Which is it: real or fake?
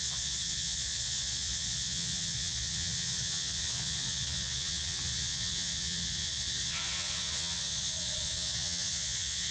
fake